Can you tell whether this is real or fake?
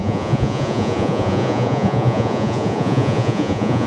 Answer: fake